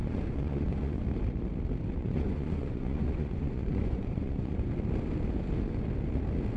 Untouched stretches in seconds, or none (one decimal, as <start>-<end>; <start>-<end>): 1.0-2.0; 4.7-6.6